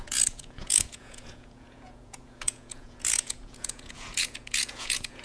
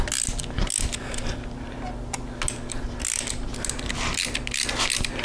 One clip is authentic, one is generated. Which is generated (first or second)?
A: first